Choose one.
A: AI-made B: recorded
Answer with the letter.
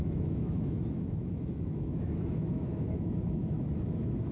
A